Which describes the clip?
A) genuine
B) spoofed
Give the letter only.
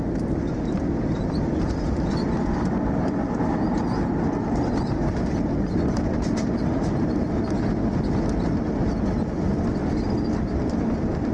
A